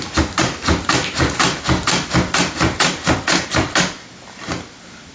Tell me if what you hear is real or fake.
real